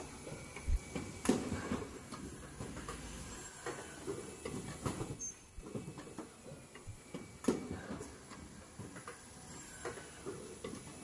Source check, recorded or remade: recorded